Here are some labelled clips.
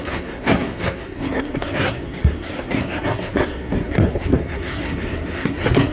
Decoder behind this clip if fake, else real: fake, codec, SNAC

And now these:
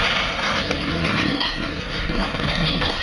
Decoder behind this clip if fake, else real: fake, codec, SNAC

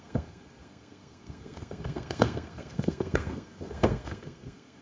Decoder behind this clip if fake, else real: fake, codec, SNAC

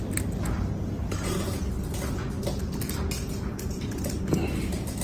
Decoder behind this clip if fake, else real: real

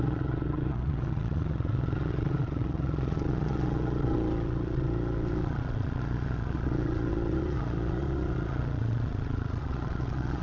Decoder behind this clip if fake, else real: fake, vocoder, Vocos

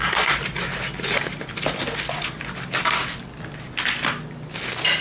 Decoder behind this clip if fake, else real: real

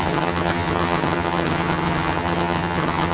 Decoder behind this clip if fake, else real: fake, vocoder, HiFi-GAN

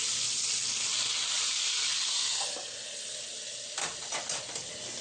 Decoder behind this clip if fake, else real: real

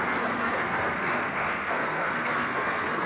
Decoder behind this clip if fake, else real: fake, codec, SNAC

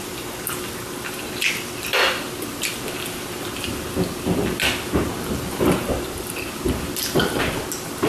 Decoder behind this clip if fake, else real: real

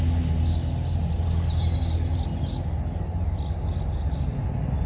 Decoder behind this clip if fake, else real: real